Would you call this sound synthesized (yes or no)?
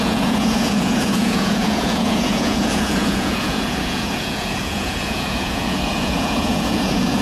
yes